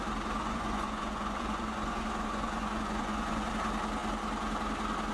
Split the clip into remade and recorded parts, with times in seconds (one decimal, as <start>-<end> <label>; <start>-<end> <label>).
0.0-0.4 recorded; 0.4-3.5 remade; 3.5-5.1 recorded